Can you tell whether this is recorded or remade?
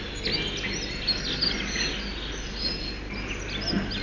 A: recorded